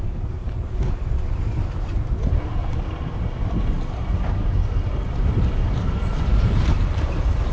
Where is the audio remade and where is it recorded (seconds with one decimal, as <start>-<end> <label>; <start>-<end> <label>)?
0.0-0.4 remade; 0.4-2.5 recorded; 2.5-4.6 remade; 4.6-5.8 recorded; 5.8-7.5 remade